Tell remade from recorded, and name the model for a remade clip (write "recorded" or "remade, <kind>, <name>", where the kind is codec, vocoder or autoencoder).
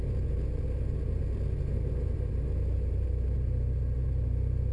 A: recorded